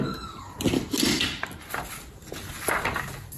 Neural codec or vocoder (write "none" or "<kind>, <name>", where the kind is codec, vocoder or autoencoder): none